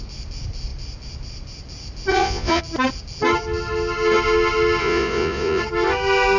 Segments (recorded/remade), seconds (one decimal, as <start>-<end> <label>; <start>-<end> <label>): 0.0-2.1 recorded; 2.1-2.6 remade; 2.6-4.8 recorded; 4.8-5.6 remade; 5.6-6.4 recorded